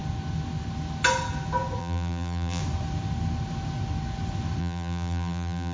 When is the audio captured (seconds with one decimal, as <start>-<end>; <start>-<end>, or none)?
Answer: 0.0-1.8; 2.6-4.6